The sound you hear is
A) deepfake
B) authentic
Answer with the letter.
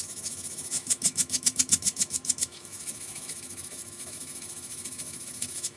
A